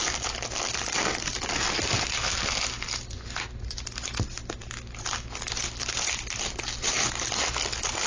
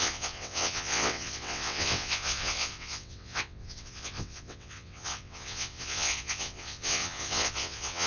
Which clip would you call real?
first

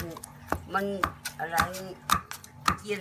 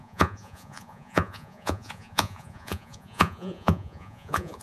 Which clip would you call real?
first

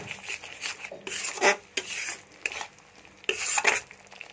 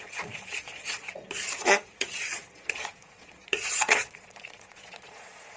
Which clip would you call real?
first